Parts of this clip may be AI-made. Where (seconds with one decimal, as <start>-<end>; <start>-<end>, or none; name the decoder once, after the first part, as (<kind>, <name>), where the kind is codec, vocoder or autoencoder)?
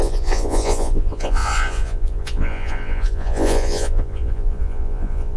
0.0-5.4 (vocoder, Vocos)